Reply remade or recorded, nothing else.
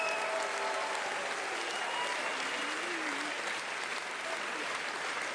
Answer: recorded